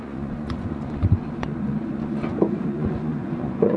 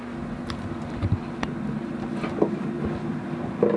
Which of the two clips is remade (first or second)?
first